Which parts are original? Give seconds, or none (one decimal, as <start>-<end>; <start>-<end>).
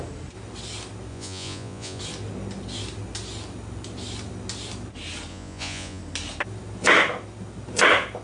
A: 0.0-1.1; 2.0-5.3; 6.0-8.2